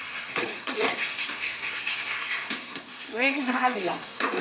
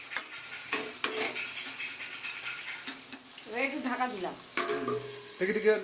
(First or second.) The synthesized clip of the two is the first